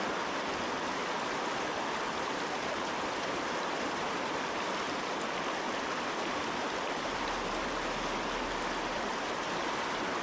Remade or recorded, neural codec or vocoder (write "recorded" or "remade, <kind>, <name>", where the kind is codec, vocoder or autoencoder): recorded